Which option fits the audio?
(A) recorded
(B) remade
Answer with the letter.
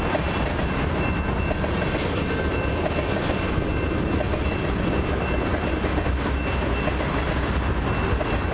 A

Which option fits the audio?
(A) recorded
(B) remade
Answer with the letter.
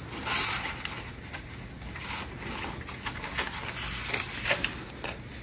A